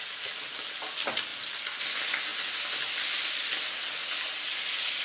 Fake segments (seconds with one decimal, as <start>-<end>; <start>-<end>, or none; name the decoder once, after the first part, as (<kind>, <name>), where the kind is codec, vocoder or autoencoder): none